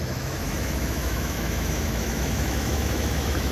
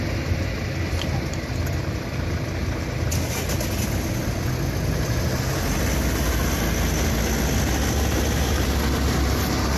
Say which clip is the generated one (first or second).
first